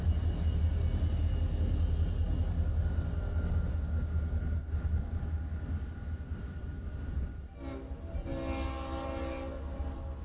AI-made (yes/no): no